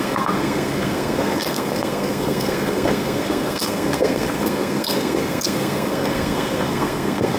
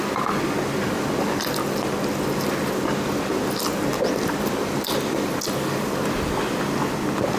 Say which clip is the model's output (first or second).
first